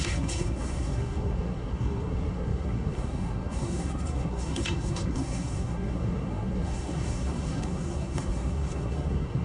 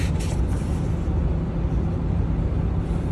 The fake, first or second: first